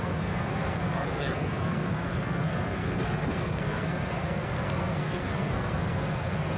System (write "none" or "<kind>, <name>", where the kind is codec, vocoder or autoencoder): codec, SNAC